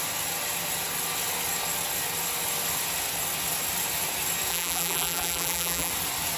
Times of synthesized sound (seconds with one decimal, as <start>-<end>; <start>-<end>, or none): 4.5-5.9